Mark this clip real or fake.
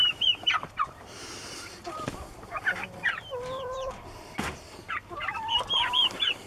fake